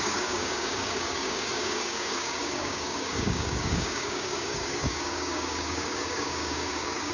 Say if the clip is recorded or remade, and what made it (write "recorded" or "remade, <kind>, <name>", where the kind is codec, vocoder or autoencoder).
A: remade, codec, DAC